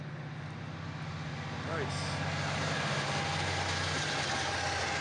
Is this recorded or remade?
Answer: recorded